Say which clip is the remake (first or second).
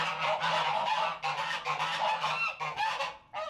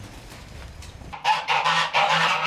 second